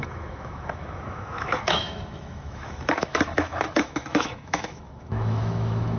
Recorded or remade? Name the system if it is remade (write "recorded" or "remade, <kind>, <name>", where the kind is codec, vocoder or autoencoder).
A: remade, autoencoder, DAC-VAE